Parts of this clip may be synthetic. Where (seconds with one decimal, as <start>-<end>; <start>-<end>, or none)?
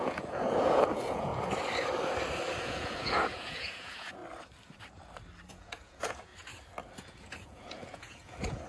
0.0-1.3; 2.6-4.2; 5.5-6.3; 7.0-8.7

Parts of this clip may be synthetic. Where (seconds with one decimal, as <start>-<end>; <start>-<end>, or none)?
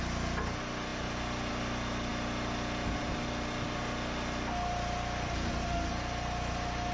none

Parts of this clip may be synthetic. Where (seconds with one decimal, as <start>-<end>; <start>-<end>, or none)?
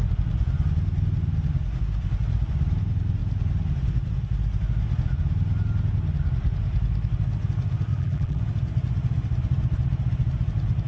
7.9-8.4